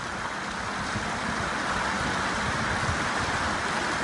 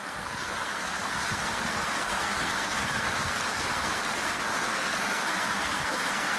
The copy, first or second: second